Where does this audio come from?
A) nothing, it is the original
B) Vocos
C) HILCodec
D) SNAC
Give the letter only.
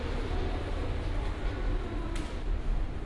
A